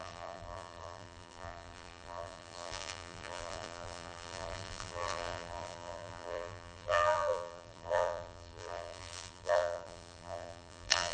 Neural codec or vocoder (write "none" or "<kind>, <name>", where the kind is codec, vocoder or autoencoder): vocoder, BigVGAN v2